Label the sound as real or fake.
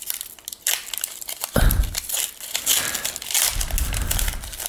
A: real